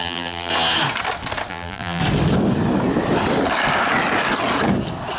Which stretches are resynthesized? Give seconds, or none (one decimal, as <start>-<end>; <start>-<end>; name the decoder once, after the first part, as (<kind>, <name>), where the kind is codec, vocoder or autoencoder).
0.0-0.5 (vocoder, BigVGAN v2); 1.5-2.0

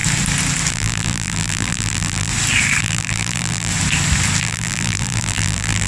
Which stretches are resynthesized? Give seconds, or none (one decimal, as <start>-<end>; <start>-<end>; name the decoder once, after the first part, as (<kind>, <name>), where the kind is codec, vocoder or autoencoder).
0.7-2.3 (vocoder, BigVGAN v2); 2.8-3.7; 4.4-5.9

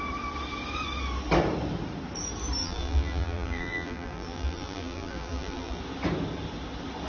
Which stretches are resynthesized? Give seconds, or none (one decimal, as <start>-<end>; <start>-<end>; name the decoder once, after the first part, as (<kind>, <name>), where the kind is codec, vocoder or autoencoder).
2.6-5.8 (vocoder, BigVGAN v2)

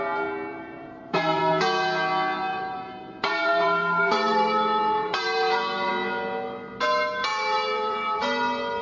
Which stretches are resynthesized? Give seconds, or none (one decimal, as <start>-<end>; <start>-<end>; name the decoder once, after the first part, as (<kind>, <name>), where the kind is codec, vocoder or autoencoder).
0.5-1.4 (vocoder, BigVGAN v2); 2.5-5.9; 7.3-8.2

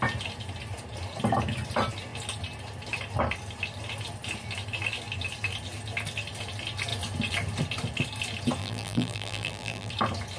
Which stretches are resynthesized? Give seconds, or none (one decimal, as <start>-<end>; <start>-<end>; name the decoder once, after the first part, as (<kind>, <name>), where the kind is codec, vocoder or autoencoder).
8.6-9.9 (vocoder, BigVGAN v2)

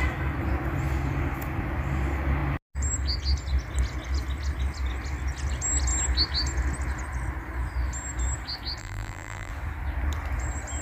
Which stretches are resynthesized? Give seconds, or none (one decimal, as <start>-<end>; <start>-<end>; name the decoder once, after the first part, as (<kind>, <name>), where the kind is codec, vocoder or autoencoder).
8.8-9.5 (vocoder, BigVGAN v2)

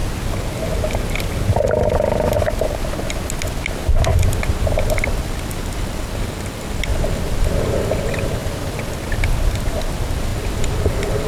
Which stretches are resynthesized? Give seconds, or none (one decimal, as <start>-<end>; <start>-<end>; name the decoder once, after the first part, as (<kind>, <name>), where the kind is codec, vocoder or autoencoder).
4.5-8.4 (vocoder, BigVGAN v2); 9.6-11.3

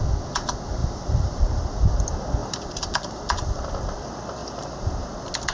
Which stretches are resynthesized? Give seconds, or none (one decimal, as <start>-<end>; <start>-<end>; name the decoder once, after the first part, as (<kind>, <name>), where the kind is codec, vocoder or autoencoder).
0.8-1.9 (vocoder, BigVGAN v2); 2.4-3.7; 4.4-5.1